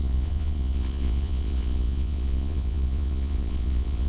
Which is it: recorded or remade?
remade